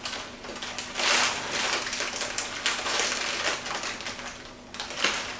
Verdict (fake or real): real